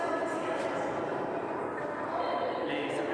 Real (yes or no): no